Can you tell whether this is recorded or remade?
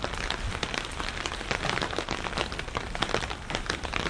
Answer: recorded